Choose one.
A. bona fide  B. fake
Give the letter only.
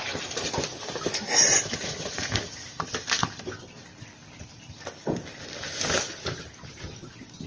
A